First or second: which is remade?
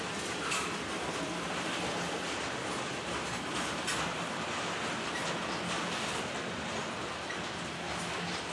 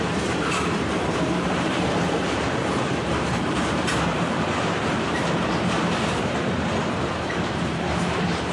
second